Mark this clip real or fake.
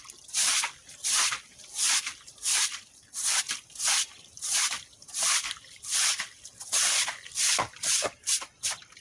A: fake